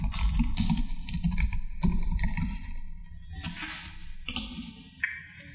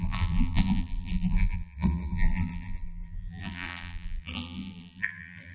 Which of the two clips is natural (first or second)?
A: first